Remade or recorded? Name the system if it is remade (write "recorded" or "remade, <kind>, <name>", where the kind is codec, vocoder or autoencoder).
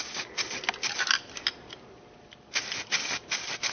recorded